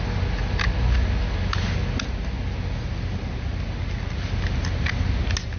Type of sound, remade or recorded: recorded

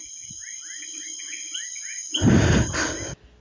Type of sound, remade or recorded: recorded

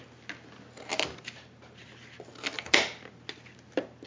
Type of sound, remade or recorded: recorded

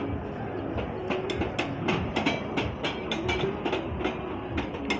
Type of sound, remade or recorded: recorded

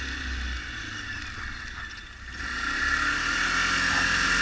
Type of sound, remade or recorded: recorded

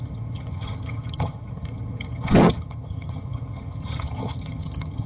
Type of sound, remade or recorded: remade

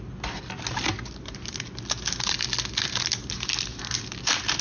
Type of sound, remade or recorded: recorded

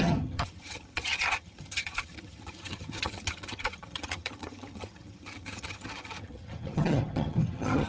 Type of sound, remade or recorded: remade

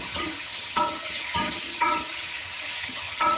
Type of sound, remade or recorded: remade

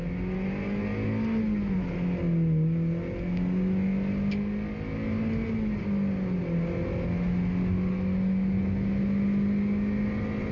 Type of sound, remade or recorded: recorded